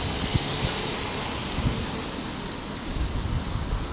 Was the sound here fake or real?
fake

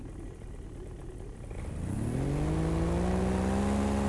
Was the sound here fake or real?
real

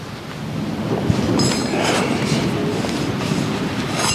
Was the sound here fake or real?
real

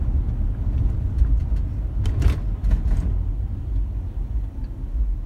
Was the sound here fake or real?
real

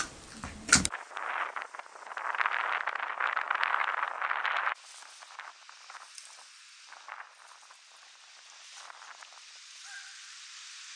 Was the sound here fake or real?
real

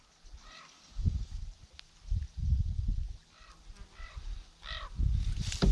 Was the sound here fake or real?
real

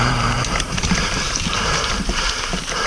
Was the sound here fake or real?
fake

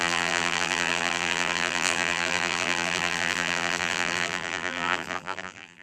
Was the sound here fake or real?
fake